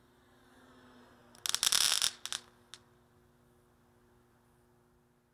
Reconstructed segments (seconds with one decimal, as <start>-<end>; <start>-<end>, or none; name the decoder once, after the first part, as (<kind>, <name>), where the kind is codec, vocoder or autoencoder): none